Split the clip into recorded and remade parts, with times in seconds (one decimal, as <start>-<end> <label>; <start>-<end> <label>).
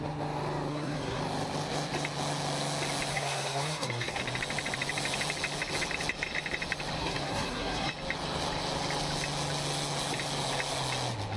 0.0-0.7 recorded; 0.7-1.2 remade; 1.2-3.1 recorded; 3.1-4.2 remade; 4.2-7.0 recorded; 7.0-7.9 remade; 7.9-11.4 recorded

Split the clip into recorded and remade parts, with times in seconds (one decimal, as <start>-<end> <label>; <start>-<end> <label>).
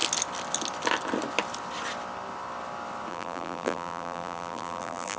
0.0-3.1 recorded; 3.1-5.2 remade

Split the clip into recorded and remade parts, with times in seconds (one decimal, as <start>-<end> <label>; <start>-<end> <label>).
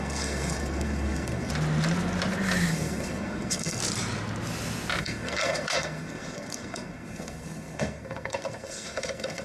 0.0-1.5 remade; 1.5-2.7 recorded; 2.7-3.8 remade; 3.8-5.0 recorded; 5.0-9.4 remade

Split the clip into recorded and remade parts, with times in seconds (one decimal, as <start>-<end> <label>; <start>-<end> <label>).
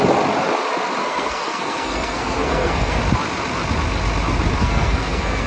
0.0-1.0 recorded; 1.0-3.0 remade; 3.0-4.6 recorded; 4.6-5.5 remade